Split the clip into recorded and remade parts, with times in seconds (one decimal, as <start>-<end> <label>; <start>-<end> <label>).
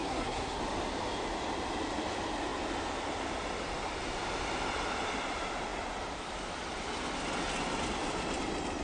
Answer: 0.0-0.6 remade; 0.6-8.8 recorded